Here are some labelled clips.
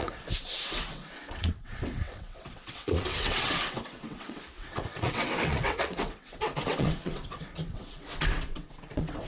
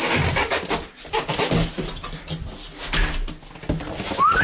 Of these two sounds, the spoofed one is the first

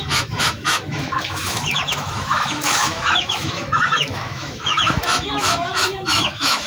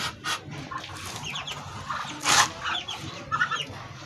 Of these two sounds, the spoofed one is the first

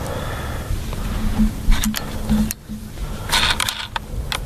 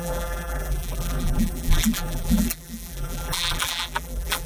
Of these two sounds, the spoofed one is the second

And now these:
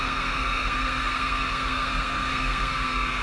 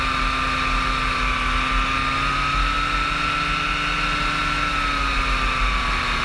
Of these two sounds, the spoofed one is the first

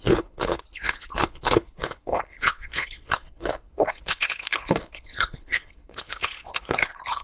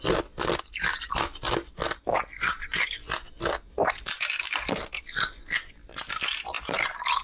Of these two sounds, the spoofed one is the first